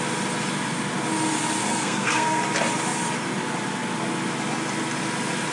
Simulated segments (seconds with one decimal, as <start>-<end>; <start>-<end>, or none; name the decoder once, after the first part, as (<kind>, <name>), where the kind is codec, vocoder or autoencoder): 1.6-2.4 (codec, SNAC)

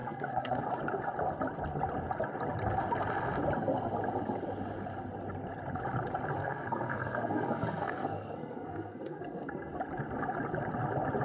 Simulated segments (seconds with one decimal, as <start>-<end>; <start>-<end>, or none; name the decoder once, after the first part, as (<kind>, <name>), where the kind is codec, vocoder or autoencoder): 0.0-0.6 (codec, SNAC); 6.4-9.7

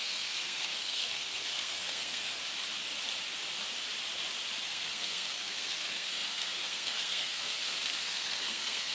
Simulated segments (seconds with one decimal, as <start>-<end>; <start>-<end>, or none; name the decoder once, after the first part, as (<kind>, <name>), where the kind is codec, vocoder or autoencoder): 0.0-2.4 (codec, SNAC); 4.7-8.9

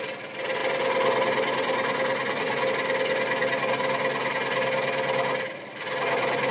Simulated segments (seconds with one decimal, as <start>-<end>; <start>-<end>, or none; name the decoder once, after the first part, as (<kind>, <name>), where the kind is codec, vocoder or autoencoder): none

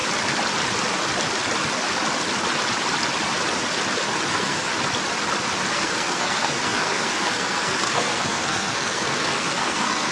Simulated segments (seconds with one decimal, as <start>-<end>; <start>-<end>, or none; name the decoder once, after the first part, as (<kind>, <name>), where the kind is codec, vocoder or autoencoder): 4.3-4.7 (codec, SNAC); 5.7-10.1

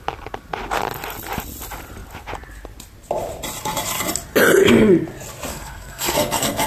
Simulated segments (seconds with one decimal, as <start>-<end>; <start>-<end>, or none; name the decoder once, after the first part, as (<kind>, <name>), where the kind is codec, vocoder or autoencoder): 5.5-6.7 (codec, SNAC)